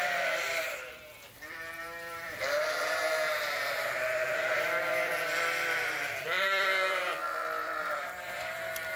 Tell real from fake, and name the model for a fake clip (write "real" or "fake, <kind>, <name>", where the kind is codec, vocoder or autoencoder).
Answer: fake, vocoder, BigVGAN v2